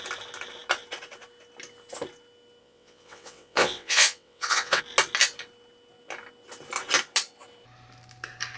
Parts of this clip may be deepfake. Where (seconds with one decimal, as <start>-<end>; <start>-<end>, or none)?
2.6-4.8